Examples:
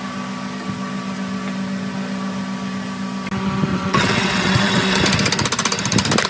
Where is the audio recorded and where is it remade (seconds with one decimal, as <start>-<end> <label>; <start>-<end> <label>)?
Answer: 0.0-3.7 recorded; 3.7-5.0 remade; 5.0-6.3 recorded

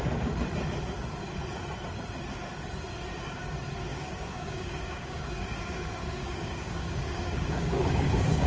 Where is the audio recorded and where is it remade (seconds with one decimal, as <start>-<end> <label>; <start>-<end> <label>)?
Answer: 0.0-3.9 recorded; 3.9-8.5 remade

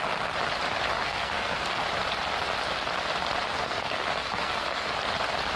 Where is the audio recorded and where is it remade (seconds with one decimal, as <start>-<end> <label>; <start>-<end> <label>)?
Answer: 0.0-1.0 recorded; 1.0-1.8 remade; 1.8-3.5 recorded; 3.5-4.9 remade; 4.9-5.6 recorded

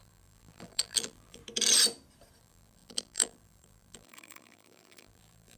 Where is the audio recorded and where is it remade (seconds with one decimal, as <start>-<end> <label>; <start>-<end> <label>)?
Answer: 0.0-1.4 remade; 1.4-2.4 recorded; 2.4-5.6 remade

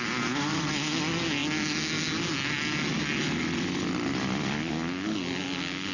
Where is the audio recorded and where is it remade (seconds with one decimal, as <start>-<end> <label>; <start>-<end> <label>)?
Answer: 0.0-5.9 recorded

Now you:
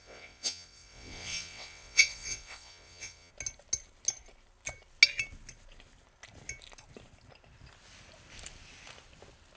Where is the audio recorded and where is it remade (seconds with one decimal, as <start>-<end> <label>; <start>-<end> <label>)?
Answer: 0.0-3.3 remade; 3.3-9.6 recorded